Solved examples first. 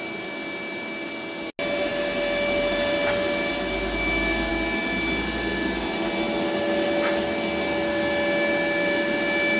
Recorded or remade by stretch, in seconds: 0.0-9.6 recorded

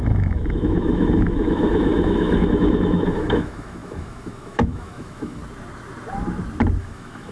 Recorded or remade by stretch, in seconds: 0.0-5.4 remade; 5.4-6.8 recorded; 6.8-7.3 remade

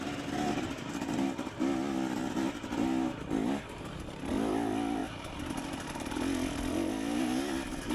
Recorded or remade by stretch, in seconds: 0.0-7.9 recorded

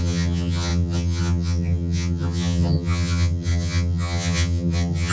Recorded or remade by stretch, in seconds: 0.0-5.1 remade

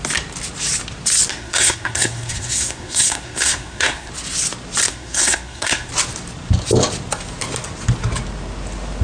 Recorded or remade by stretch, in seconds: 0.0-1.3 recorded; 1.3-4.1 remade; 4.1-4.9 recorded; 4.9-5.9 remade; 5.9-9.0 recorded

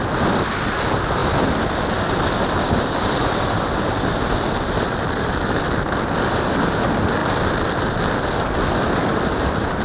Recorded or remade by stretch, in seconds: 0.0-9.8 recorded

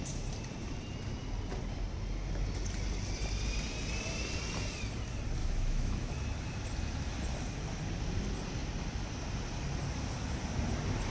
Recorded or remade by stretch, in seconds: 0.0-5.4 recorded; 5.4-6.1 remade; 6.1-11.1 recorded